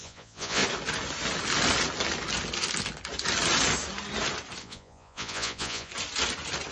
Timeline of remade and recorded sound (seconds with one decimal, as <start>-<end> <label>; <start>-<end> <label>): 0.0-0.6 remade; 0.6-4.6 recorded; 4.6-5.9 remade; 5.9-6.7 recorded